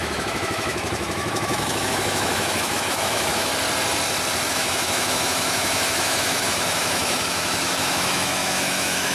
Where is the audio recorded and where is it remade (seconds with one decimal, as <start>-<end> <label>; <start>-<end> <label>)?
0.0-3.5 remade; 3.5-4.5 recorded; 4.5-9.1 remade